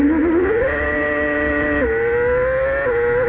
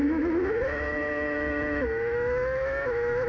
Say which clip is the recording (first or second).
first